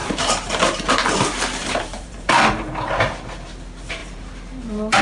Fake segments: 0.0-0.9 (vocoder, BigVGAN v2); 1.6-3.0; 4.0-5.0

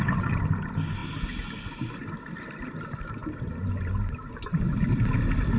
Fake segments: none

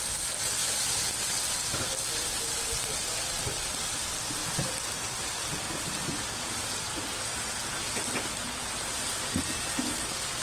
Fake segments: 0.6-1.1 (vocoder, BigVGAN v2); 4.4-7.1

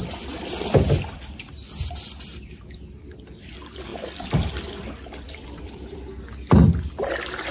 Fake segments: 3.9-6.2 (vocoder, BigVGAN v2)

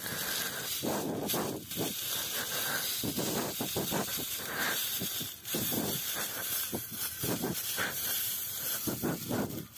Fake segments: 4.1-8.9 (vocoder, BigVGAN v2)

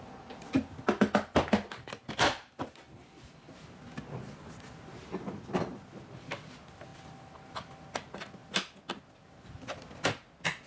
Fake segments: none